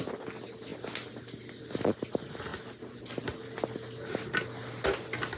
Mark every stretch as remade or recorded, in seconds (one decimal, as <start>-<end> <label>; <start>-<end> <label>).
0.0-5.4 recorded